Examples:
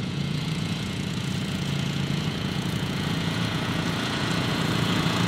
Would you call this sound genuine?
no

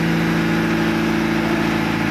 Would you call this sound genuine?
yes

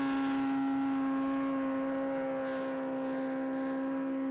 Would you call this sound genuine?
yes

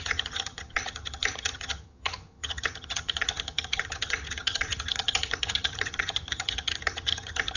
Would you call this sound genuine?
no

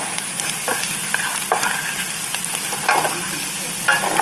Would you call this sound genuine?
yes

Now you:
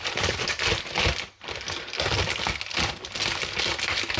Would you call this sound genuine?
yes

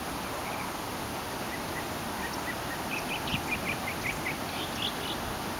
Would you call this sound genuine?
yes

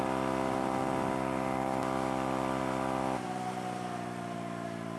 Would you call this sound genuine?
yes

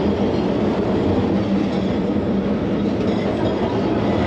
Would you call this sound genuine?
yes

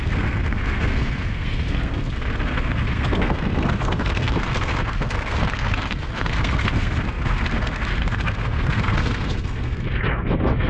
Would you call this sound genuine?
no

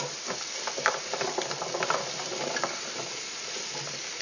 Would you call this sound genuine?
yes